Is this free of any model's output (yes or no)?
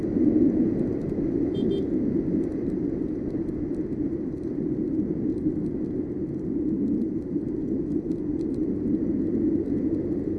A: yes